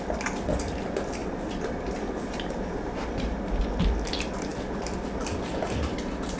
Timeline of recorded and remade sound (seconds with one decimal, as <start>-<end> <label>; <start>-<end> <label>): 0.0-6.4 recorded